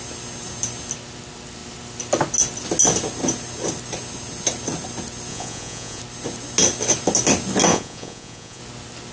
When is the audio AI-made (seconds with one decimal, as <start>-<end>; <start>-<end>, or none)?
5.3-6.0; 7.7-8.6

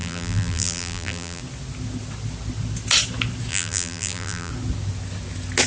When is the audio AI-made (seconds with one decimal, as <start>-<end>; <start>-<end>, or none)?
0.0-1.4; 3.5-4.5

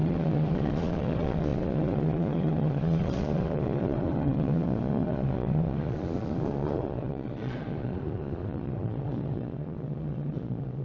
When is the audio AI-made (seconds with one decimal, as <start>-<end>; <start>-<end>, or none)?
0.0-10.8

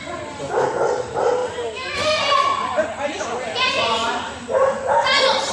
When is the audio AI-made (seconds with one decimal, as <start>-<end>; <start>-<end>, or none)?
0.0-1.4; 2.0-5.5

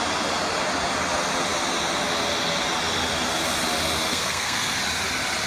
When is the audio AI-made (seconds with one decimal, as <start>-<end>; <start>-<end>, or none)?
4.1-4.8

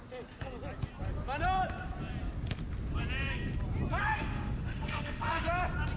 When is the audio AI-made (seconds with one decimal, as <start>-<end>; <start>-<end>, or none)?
4.0-5.4

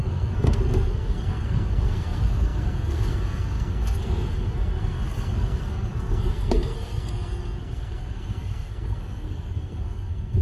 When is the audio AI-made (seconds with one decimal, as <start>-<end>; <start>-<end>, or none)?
0.0-10.4